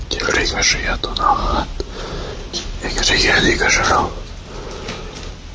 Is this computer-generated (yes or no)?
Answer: no